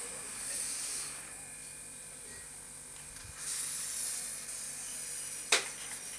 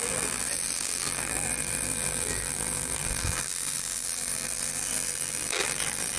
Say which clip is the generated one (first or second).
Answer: second